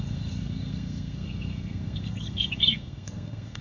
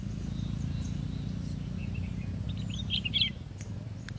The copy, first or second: first